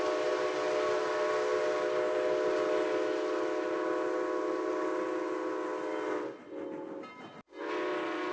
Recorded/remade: recorded